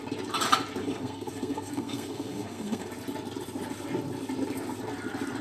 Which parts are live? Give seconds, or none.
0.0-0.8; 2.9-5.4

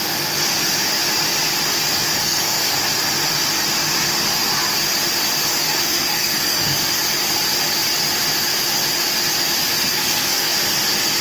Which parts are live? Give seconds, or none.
0.0-2.2; 2.8-5.7; 6.8-9.8; 10.5-11.2

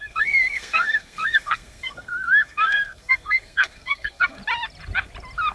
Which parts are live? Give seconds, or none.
4.4-5.5

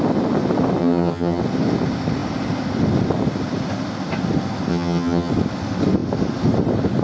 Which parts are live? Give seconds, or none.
0.0-0.8; 1.4-4.7; 5.3-7.0

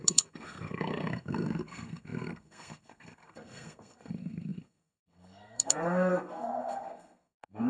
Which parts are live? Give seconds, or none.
none

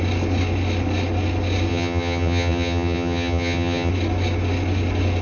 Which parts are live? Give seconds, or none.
0.0-1.7; 3.9-5.2